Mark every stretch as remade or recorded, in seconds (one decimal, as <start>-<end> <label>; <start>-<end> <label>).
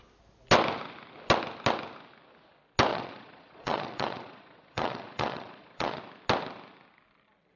0.0-2.9 recorded; 2.9-6.0 remade; 6.0-7.6 recorded